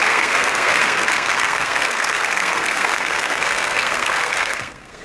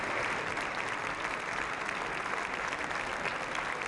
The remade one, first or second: first